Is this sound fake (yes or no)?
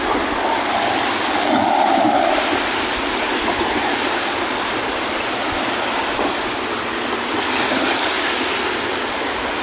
no